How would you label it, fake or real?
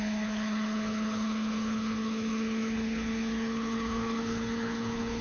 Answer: fake